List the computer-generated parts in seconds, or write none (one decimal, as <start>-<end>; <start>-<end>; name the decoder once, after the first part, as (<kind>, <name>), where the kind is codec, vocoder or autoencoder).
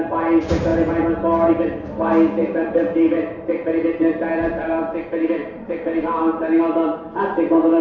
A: 0.7-1.5 (vocoder, BigVGAN v2); 2.4-3.4; 5.4-6.6